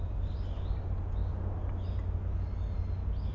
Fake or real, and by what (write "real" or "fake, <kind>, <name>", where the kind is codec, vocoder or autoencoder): real